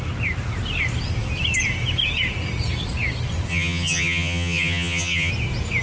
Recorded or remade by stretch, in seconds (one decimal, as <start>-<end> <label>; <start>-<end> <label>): 0.0-3.5 recorded; 3.5-5.3 remade; 5.3-5.8 recorded